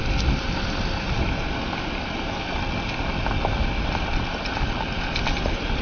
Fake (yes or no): no